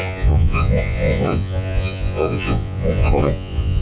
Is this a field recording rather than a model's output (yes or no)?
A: no